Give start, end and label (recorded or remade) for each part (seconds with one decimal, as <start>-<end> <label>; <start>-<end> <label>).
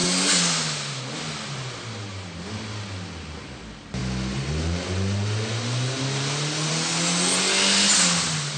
0.0-8.6 recorded